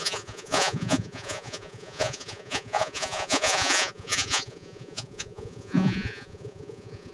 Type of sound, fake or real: fake